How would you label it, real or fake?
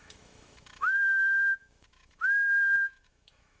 fake